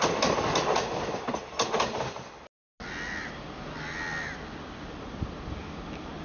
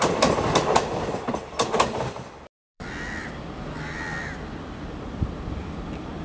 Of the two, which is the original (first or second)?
first